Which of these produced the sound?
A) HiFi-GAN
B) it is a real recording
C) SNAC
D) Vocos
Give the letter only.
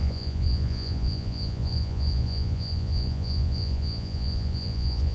D